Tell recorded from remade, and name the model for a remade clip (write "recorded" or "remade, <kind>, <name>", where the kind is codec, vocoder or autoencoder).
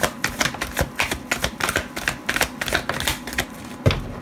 recorded